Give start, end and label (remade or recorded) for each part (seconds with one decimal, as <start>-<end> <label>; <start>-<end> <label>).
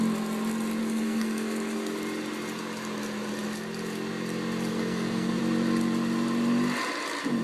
0.0-0.8 recorded; 0.8-2.0 remade; 2.0-4.7 recorded; 4.7-5.4 remade; 5.4-7.4 recorded